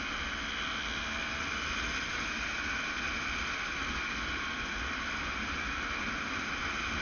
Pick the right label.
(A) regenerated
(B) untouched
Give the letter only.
B